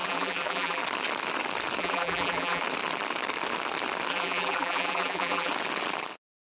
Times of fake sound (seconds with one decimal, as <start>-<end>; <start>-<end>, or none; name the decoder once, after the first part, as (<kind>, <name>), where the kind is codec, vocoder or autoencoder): 0.0-0.8 (vocoder, BigVGAN v2); 1.8-2.6; 4.1-5.5